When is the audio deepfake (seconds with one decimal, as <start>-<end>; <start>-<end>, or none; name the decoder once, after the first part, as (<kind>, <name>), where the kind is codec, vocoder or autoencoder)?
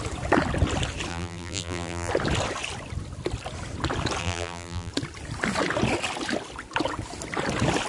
1.1-2.1 (vocoder, BigVGAN v2); 4.2-4.9